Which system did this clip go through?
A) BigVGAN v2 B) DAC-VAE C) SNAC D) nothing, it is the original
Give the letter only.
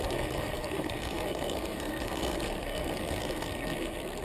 C